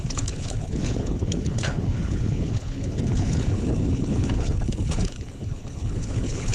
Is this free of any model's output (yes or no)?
no